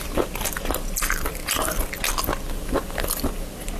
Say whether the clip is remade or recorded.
recorded